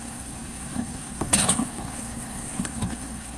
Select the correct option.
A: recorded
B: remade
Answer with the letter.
B